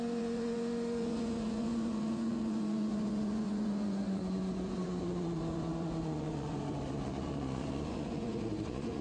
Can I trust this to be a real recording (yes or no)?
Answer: no